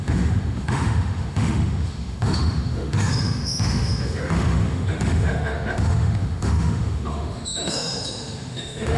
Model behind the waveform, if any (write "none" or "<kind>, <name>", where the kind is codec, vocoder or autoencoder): autoencoder, DAC-VAE